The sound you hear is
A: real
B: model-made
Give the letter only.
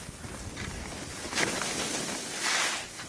A